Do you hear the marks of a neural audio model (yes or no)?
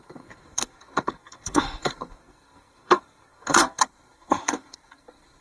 yes